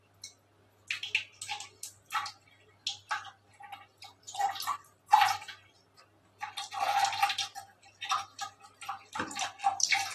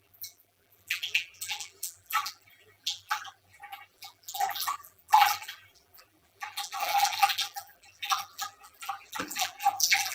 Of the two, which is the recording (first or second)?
first